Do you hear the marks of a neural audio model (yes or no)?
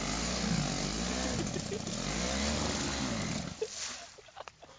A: no